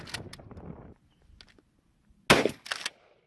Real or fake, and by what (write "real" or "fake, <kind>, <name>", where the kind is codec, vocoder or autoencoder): real